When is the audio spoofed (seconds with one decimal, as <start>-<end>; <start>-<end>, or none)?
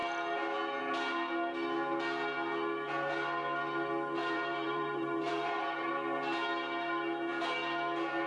4.2-5.9